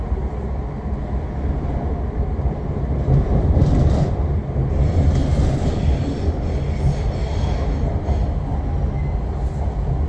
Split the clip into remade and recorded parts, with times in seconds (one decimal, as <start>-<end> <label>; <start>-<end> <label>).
0.0-10.1 recorded